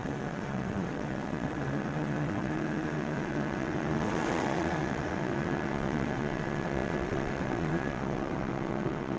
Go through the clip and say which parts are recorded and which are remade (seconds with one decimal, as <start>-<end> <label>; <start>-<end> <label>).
0.0-9.2 remade